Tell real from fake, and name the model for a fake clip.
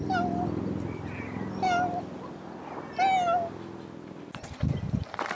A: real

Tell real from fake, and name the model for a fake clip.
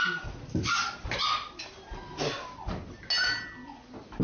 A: real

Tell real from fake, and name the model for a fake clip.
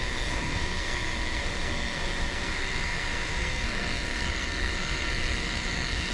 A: fake, codec, SNAC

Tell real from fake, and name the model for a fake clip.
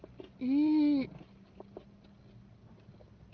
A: real